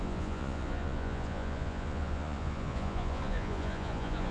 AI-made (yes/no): yes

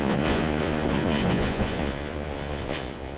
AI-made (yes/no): yes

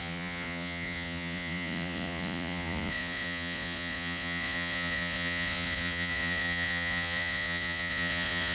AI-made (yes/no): yes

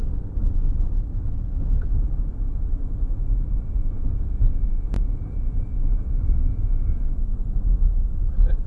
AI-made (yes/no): yes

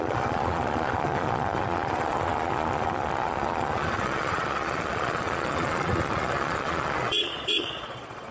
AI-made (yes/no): yes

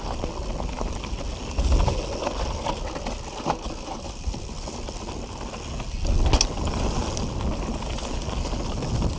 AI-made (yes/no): no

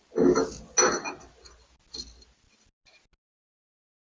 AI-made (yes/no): no